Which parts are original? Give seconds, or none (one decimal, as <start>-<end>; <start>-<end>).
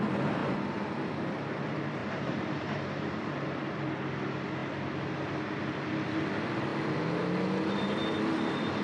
4.6-5.6; 6.7-7.8